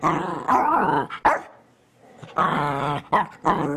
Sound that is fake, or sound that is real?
real